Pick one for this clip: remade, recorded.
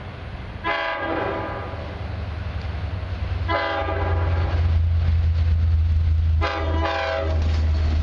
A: recorded